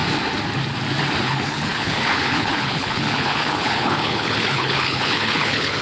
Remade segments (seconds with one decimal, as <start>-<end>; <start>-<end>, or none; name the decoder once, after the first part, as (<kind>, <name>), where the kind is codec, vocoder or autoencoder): 1.2-5.8 (codec, HILCodec)